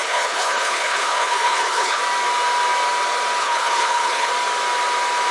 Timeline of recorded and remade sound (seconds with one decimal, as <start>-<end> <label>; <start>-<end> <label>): 0.0-2.0 remade; 2.0-3.4 recorded; 3.4-4.3 remade; 4.3-5.3 recorded